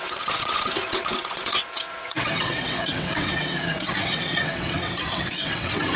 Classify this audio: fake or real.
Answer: fake